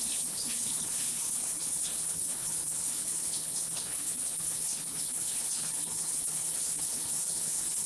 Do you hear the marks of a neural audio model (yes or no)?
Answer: yes